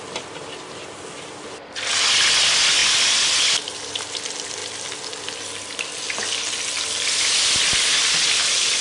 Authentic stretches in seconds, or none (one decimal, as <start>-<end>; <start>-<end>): 0.0-8.8